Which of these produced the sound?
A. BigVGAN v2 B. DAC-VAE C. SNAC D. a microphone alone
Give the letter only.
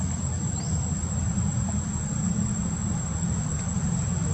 A